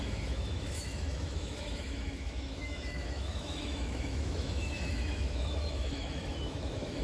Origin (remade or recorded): remade